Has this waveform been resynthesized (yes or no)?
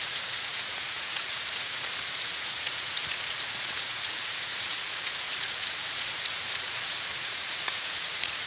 yes